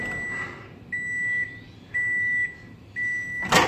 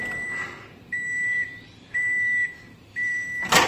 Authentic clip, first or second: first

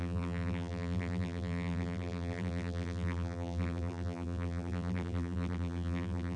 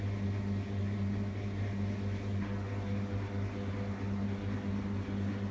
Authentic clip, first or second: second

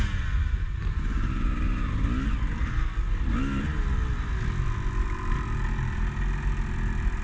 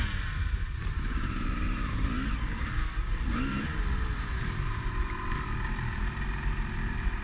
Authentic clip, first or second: first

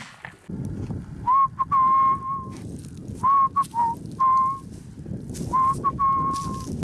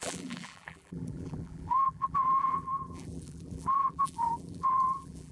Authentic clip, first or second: first